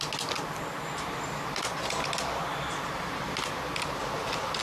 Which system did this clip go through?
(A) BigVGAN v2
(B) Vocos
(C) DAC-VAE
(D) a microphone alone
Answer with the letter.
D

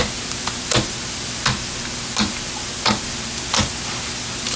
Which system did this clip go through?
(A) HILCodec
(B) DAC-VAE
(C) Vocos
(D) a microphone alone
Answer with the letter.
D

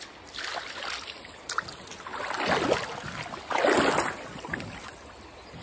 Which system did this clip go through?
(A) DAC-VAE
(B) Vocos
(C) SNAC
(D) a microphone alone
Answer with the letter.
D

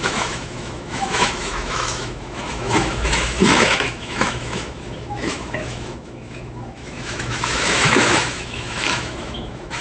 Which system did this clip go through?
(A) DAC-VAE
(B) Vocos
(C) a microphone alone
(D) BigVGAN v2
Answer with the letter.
A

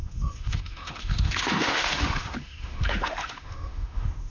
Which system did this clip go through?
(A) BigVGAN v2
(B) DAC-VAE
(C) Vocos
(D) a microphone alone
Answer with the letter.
B